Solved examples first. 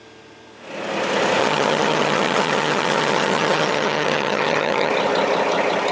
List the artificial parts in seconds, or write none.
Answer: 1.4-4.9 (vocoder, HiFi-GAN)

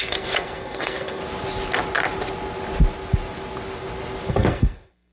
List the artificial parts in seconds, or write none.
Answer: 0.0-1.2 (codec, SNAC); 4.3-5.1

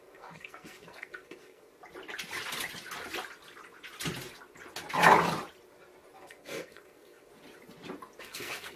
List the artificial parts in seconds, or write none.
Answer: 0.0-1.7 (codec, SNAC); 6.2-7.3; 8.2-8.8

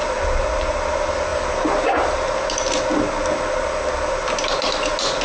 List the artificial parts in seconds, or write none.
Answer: none

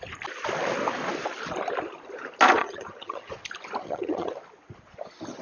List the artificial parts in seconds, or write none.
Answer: 2.6-3.3 (vocoder, HiFi-GAN); 3.8-4.3

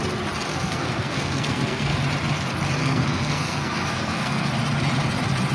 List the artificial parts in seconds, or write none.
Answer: 0.5-2.0 (codec, SNAC); 2.8-4.5

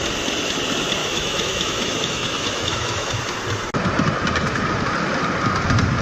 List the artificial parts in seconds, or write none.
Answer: 1.0-3.2 (autoencoder, DAC-VAE)

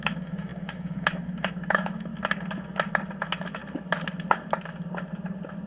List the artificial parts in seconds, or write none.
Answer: 0.0-2.1 (autoencoder, DAC-VAE); 3.2-3.6